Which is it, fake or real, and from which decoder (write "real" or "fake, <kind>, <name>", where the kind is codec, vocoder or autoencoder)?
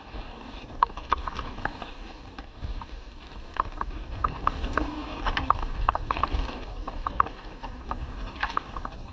fake, codec, DAC